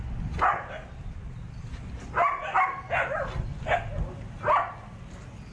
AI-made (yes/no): no